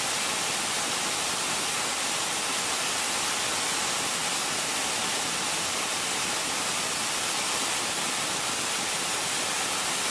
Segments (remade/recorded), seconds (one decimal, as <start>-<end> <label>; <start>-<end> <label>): 0.0-10.1 recorded